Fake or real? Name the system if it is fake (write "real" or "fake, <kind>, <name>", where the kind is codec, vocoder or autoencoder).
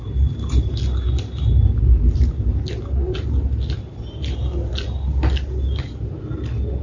real